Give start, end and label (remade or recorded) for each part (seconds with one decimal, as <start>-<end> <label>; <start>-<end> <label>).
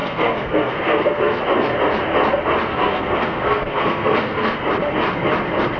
0.0-1.4 remade; 1.4-2.7 recorded; 2.7-4.6 remade; 4.6-5.8 recorded